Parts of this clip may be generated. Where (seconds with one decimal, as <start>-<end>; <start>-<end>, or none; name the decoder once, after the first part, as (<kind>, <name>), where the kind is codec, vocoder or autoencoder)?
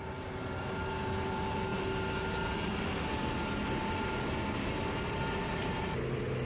none